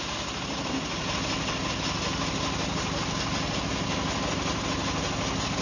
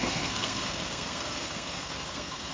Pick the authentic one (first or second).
first